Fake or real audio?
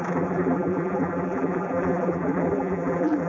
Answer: fake